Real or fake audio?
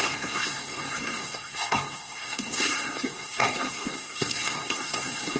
fake